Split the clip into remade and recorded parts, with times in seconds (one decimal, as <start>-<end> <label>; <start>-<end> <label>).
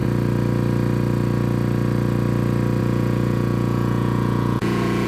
0.0-2.8 recorded; 2.8-5.1 remade